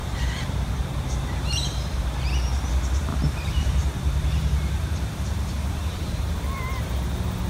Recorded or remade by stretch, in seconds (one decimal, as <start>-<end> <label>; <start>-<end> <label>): 0.0-2.2 remade; 2.2-3.1 recorded; 3.1-6.4 remade; 6.4-7.5 recorded